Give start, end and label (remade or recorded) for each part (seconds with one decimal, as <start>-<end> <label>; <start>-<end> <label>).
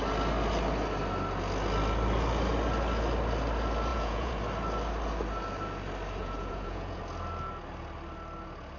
0.0-3.9 recorded; 3.9-4.4 remade; 4.4-6.2 recorded; 6.2-7.0 remade; 7.0-8.8 recorded